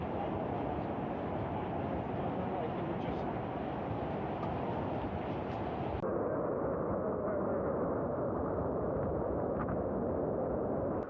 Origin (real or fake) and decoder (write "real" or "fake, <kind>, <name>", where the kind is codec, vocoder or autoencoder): real